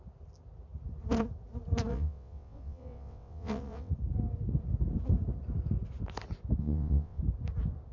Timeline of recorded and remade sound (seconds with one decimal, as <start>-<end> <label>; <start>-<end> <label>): 0.0-1.9 recorded; 1.9-3.9 remade; 3.9-6.6 recorded; 6.6-7.2 remade; 7.2-7.9 recorded